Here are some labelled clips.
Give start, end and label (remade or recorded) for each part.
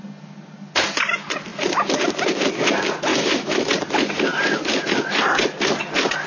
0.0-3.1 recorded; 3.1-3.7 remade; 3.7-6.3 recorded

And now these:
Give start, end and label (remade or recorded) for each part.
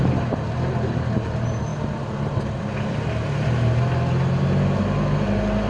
0.0-5.7 recorded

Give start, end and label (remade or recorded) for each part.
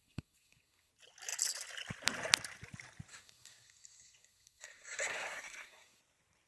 0.0-0.9 remade; 0.9-3.1 recorded; 3.1-6.0 remade; 6.0-6.5 recorded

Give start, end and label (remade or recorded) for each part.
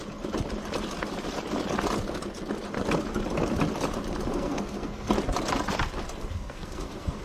0.0-4.3 recorded; 4.3-5.1 remade; 5.1-6.3 recorded; 6.3-7.2 remade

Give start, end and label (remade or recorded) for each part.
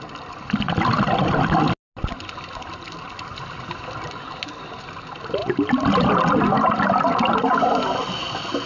0.0-8.7 recorded